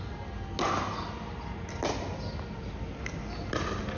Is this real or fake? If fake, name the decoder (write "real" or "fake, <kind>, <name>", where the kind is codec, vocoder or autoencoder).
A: real